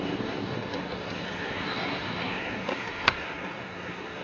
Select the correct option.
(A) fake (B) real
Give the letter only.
A